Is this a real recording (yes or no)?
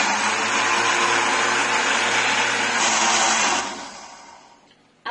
yes